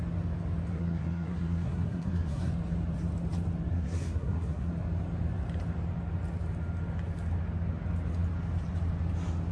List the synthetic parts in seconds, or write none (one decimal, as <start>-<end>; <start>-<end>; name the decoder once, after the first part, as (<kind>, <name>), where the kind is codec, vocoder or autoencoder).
0.7-2.5 (codec, SNAC); 3.7-4.7